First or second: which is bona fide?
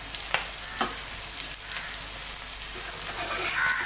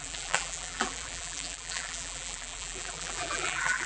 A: first